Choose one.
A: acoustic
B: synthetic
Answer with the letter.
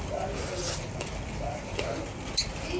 B